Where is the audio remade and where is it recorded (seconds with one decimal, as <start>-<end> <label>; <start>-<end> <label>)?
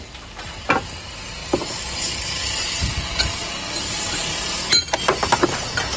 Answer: 0.0-6.0 recorded